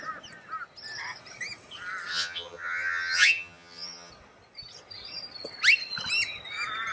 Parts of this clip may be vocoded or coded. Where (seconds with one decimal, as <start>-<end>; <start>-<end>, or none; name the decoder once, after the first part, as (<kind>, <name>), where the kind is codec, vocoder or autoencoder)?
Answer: 2.1-4.1 (vocoder, HiFi-GAN)